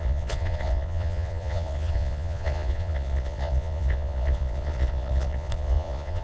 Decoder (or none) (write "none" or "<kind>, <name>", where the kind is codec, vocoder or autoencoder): vocoder, Vocos